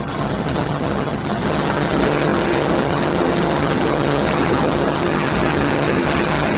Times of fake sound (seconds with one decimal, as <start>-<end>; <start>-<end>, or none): 0.0-6.6